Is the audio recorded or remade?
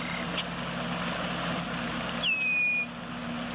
recorded